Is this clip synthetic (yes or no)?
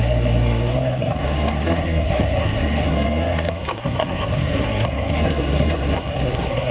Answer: yes